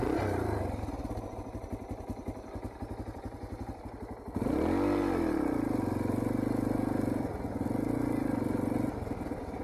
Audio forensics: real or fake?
real